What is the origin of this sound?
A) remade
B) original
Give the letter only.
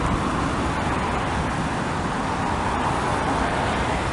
B